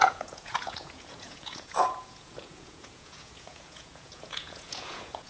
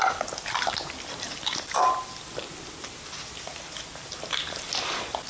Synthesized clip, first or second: first